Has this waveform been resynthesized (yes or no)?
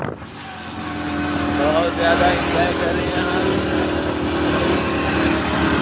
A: no